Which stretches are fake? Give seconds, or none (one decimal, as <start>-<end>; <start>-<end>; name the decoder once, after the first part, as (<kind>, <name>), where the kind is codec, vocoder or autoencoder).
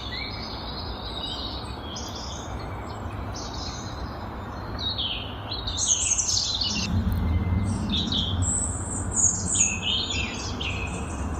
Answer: none